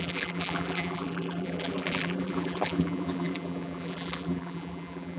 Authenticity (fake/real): fake